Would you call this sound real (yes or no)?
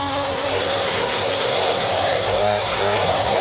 no